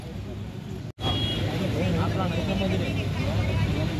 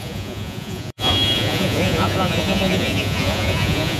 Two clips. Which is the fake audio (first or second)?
second